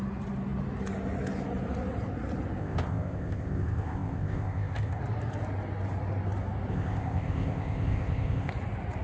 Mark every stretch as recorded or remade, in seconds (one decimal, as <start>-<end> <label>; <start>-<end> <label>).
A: 0.0-2.6 recorded; 2.6-5.0 remade; 5.0-6.7 recorded; 6.7-8.5 remade; 8.5-9.0 recorded

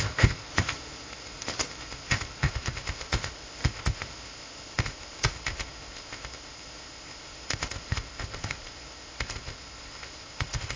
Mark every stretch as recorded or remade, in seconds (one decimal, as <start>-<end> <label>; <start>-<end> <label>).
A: 0.0-10.8 remade

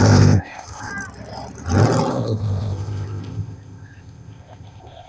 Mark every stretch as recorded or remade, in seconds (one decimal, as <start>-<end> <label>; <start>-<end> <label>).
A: 0.0-0.9 remade; 0.9-2.1 recorded; 2.1-5.1 remade

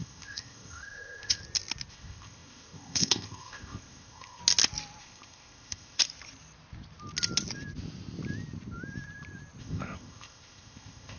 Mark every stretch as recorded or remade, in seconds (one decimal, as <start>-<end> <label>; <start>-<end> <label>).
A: 0.0-1.4 remade; 1.4-1.9 recorded; 1.9-4.4 remade; 4.4-5.0 recorded; 5.0-6.0 remade; 6.0-9.6 recorded; 9.6-11.2 remade

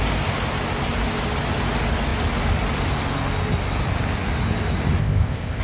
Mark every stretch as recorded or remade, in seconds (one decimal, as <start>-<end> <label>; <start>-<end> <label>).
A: 0.0-5.0 recorded; 5.0-5.6 remade

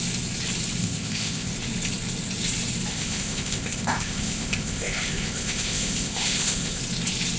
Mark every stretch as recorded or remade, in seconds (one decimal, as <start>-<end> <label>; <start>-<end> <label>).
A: 0.0-0.8 recorded; 0.8-1.5 remade; 1.5-2.9 recorded; 2.9-6.8 remade; 6.8-7.4 recorded